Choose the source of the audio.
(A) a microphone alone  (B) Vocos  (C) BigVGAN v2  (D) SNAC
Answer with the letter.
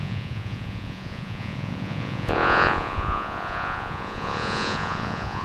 B